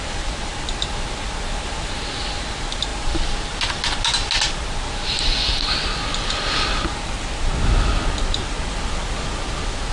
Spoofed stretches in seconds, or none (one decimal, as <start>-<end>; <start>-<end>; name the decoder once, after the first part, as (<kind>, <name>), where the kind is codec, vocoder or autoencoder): none